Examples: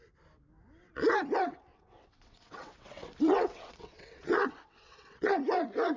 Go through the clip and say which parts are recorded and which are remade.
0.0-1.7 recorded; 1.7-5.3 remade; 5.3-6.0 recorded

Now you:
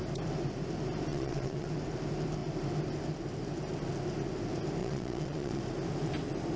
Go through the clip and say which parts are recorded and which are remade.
0.0-1.1 recorded; 1.1-1.7 remade; 1.7-4.8 recorded; 4.8-5.6 remade; 5.6-6.6 recorded

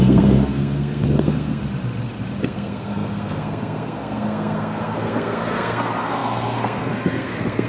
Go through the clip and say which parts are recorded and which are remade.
0.0-1.6 remade; 1.6-2.4 recorded; 2.4-7.7 remade

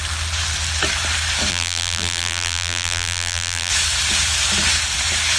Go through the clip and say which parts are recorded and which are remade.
0.0-1.5 recorded; 1.5-3.7 remade; 3.7-5.4 recorded

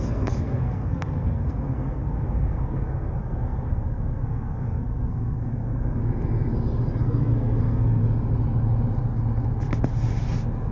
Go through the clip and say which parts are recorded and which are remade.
0.0-6.0 remade; 6.0-7.0 recorded; 7.0-8.0 remade; 8.0-10.7 recorded